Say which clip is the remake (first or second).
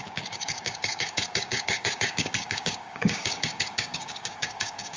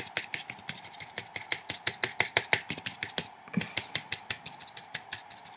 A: first